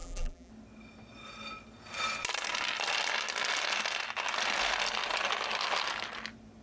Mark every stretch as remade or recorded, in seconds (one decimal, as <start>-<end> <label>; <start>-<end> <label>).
0.0-0.5 remade; 0.5-6.6 recorded